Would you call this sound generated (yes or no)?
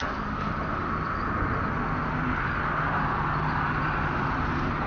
no